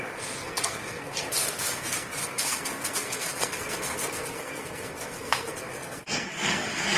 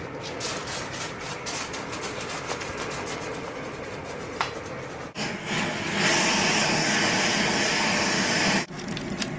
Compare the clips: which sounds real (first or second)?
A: second